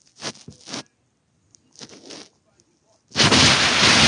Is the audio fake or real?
real